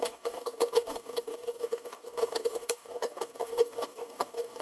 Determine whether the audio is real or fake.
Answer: fake